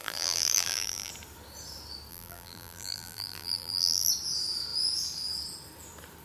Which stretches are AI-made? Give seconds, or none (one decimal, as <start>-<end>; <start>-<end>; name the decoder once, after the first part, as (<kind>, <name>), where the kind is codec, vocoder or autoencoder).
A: 0.0-1.1 (vocoder, BigVGAN v2); 2.1-4.1